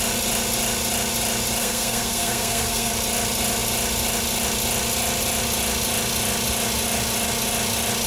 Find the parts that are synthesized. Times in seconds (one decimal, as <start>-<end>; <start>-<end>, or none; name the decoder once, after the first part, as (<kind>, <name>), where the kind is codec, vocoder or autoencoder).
1.6-2.9 (codec, SNAC)